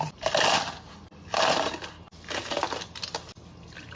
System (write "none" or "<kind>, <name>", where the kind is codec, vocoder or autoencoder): none